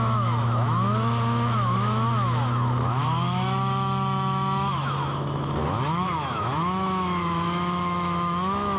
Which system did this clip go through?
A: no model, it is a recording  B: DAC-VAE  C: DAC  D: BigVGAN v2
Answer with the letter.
B